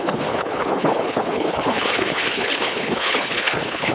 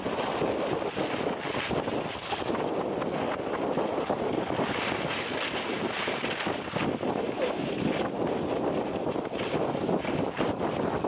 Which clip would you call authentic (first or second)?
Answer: second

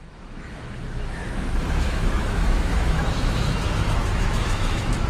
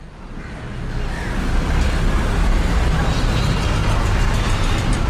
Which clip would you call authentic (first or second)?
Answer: second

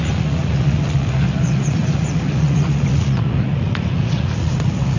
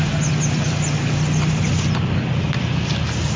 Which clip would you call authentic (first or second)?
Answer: second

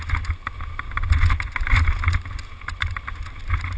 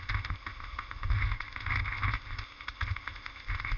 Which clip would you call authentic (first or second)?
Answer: first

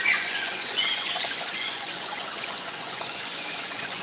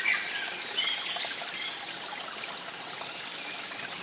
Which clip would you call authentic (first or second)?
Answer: second